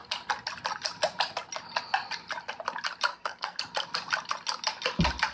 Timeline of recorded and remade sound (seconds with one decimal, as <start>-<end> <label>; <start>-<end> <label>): 0.0-3.1 recorded; 3.1-3.6 remade; 3.6-5.3 recorded